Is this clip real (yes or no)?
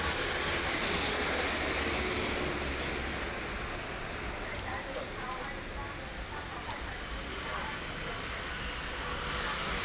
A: yes